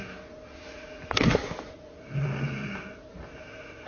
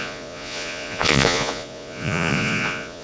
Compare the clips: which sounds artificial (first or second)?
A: second